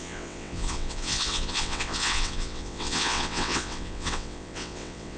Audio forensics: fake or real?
fake